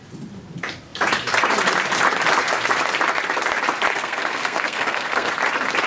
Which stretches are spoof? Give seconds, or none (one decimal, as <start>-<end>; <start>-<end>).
3.9-5.3